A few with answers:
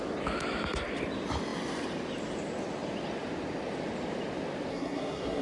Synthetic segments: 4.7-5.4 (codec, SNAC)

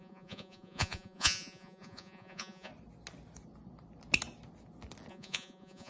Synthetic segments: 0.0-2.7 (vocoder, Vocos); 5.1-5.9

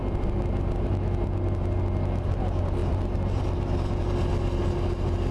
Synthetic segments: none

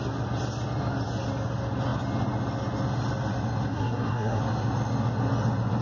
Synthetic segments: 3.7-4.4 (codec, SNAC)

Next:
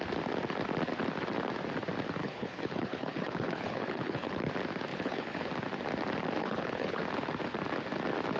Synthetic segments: 2.2-4.5 (codec, HILCodec); 4.9-5.5; 6.4-7.0

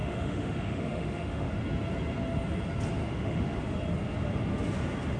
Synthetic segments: 0.0-1.6 (autoencoder, DAC-VAE); 3.0-3.6